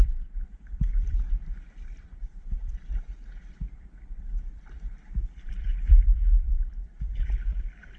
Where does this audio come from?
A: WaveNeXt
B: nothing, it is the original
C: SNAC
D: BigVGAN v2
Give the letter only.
D